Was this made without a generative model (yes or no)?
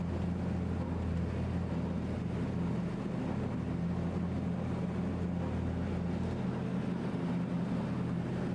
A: yes